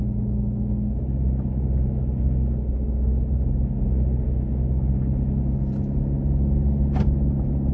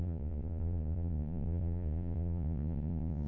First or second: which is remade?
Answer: second